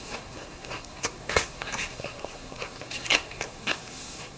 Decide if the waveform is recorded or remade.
remade